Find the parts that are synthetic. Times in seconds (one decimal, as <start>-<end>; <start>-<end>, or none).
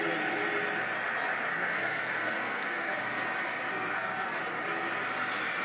1.5-3.2; 3.7-4.4